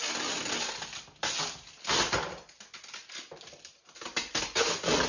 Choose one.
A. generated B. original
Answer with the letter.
B